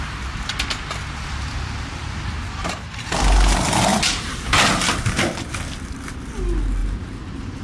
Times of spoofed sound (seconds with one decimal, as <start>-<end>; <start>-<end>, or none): 1.5-3.0; 3.9-4.5; 6.8-7.6